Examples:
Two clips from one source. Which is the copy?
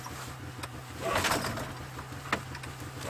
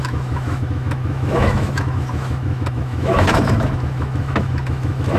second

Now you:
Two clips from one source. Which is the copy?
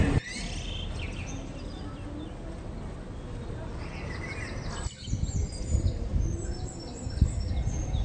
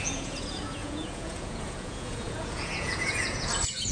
second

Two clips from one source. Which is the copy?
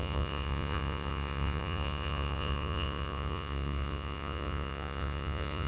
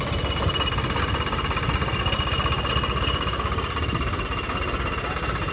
first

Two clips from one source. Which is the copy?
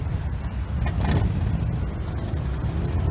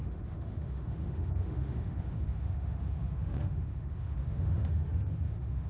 second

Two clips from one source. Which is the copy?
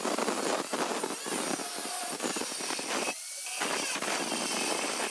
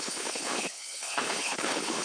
second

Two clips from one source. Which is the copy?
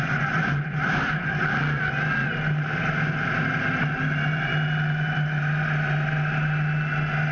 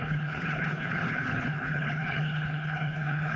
second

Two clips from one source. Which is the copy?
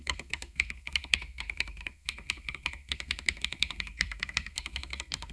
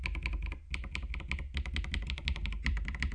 first